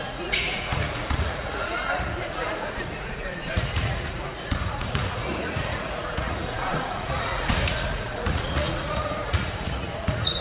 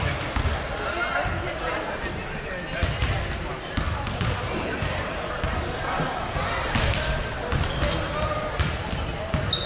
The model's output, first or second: first